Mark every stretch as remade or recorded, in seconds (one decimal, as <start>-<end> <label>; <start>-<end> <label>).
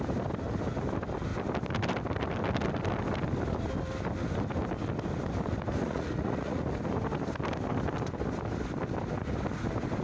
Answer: 0.0-5.8 recorded; 5.8-6.6 remade; 6.6-10.0 recorded